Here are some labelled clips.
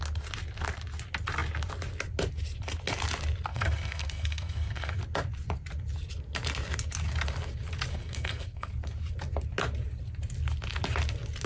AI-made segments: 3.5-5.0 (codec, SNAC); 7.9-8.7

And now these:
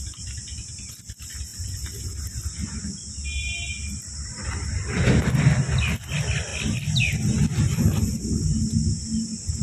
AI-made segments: none

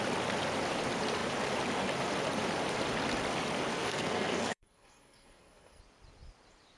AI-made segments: 3.7-5.8 (codec, SNAC)

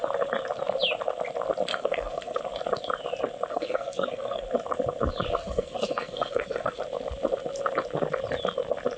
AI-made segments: 1.7-2.4 (codec, SNAC); 3.5-4.4; 5.4-6.8

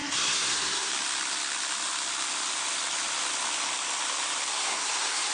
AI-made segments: 0.0-0.9 (codec, SNAC); 4.5-5.3